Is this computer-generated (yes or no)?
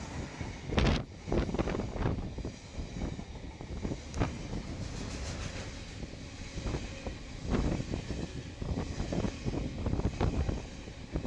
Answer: no